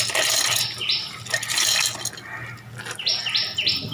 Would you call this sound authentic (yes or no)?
yes